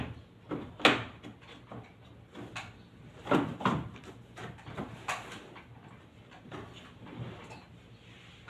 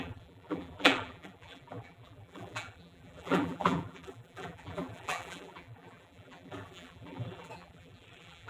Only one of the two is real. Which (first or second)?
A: first